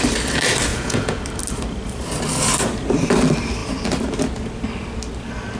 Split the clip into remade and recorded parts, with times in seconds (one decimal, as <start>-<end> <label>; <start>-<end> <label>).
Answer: 0.0-0.7 recorded; 0.7-1.2 remade; 1.2-5.6 recorded